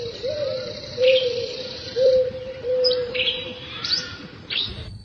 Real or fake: fake